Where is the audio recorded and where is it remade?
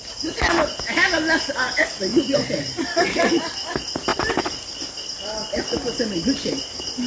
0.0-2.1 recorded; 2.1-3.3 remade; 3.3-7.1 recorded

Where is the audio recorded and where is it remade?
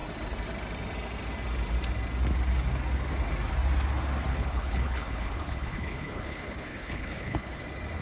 0.0-4.3 recorded; 4.3-7.6 remade; 7.6-8.0 recorded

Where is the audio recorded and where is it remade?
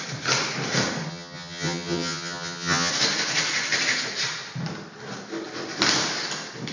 0.0-1.1 recorded; 1.1-2.9 remade; 2.9-6.7 recorded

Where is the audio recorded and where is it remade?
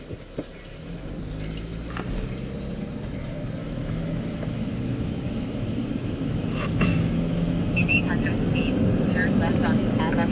0.0-3.6 recorded; 3.6-8.1 remade; 8.1-10.3 recorded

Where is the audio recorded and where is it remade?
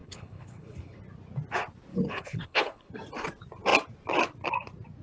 0.0-1.0 remade; 1.0-1.9 recorded; 1.9-2.9 remade; 2.9-5.0 recorded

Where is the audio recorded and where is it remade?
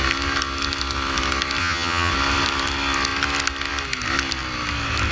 0.0-1.6 recorded; 1.6-2.1 remade; 2.1-5.1 recorded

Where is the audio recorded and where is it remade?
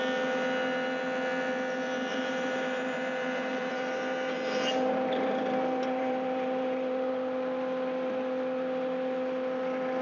0.0-2.1 recorded; 2.1-7.1 remade; 7.1-10.0 recorded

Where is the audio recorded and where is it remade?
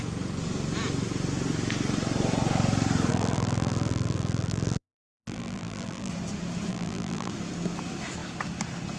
0.0-3.1 recorded; 3.1-6.1 remade; 6.1-6.7 recorded; 6.7-7.3 remade; 7.3-9.0 recorded